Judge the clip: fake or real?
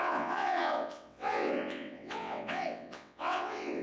fake